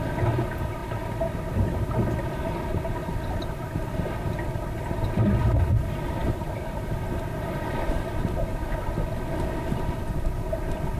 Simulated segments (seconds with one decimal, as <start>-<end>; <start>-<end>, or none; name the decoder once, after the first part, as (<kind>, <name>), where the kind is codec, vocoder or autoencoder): none